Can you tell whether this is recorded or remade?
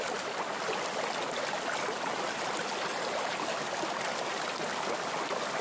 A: recorded